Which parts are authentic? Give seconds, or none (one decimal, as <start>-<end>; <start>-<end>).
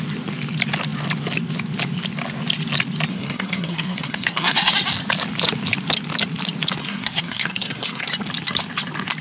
0.0-3.1; 4.7-6.8; 8.1-9.2